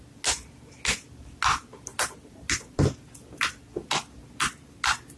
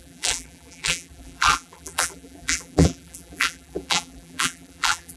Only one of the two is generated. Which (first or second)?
second